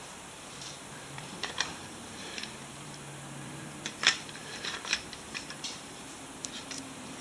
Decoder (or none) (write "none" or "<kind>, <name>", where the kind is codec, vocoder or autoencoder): vocoder, BigVGAN v2